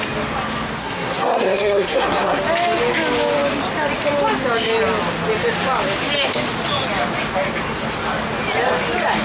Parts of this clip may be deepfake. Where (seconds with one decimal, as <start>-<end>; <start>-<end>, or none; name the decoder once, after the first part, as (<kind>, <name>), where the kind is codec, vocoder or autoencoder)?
0.8-2.4 (codec, SNAC)